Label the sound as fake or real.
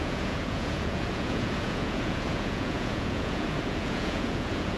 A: fake